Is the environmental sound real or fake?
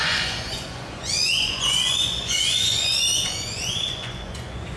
fake